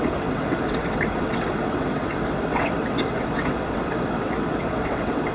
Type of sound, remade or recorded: remade